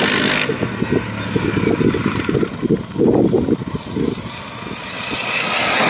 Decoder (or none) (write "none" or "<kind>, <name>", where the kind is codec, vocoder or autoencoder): none